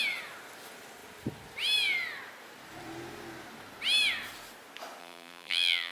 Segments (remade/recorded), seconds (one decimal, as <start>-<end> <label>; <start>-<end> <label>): 0.0-5.0 recorded; 5.0-5.9 remade